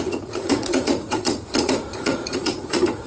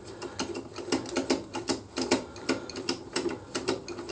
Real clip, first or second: second